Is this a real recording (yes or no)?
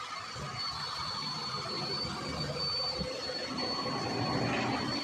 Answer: yes